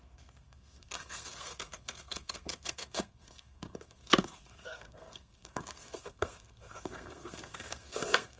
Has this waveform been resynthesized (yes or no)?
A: yes